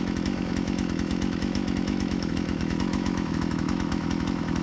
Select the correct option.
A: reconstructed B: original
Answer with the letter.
A